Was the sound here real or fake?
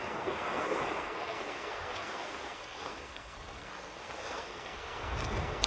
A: fake